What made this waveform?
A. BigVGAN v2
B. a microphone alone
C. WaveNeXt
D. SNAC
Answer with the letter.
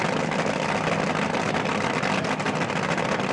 B